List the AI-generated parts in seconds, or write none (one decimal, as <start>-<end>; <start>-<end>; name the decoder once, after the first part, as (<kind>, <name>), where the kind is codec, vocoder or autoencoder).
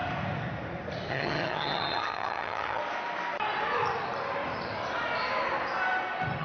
1.1-2.8 (vocoder, HiFi-GAN)